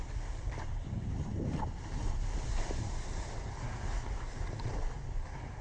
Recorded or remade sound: recorded